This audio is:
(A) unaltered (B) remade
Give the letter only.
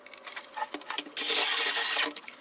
A